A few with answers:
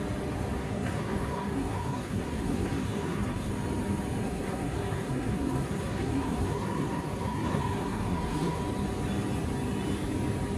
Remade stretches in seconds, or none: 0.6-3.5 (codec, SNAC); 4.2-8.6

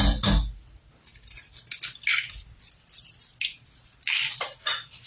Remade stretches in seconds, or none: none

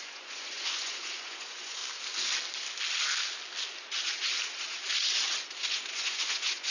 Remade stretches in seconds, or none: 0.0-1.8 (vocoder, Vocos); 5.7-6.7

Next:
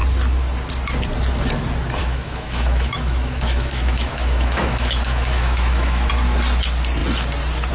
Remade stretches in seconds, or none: 2.0-6.1 (autoencoder, DAC-VAE)

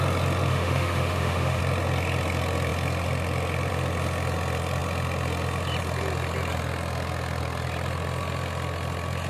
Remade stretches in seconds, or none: 0.5-1.6 (autoencoder, DAC-VAE)

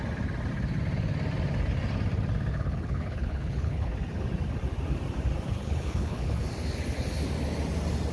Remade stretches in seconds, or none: 2.5-3.9 (codec, HILCodec); 5.5-6.4